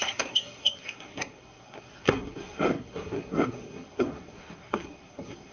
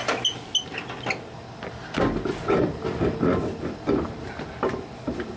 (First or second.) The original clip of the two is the second